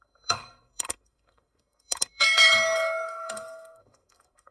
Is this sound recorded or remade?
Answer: remade